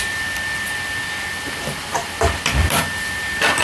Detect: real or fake real